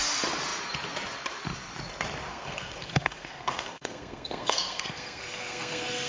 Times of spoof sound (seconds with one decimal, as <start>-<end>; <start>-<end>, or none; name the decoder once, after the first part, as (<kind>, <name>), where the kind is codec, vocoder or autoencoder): 2.3-6.1 (codec, SNAC)

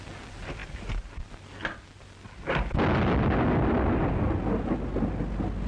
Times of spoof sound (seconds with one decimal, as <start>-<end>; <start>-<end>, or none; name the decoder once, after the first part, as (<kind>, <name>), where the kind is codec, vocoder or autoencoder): none

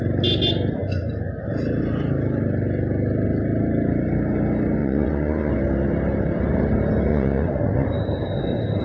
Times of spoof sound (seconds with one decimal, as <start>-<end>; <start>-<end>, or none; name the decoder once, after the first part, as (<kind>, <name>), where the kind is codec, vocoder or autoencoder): 4.8-5.5 (vocoder, Vocos); 7.1-7.9

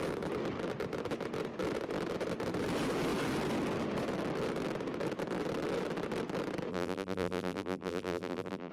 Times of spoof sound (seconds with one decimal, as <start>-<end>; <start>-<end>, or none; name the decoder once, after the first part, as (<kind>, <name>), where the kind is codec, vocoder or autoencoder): 6.7-8.7 (vocoder, BigVGAN v2)

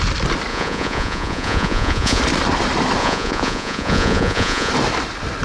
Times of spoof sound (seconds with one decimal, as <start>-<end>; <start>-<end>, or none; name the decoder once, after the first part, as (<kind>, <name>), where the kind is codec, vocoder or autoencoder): 0.5-2.2 (vocoder, Vocos); 3.0-4.7

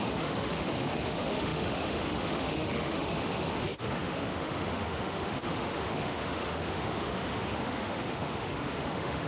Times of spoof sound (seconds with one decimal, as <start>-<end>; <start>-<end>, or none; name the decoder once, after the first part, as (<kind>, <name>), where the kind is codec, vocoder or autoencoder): 0.0-9.3 (autoencoder, DAC-VAE)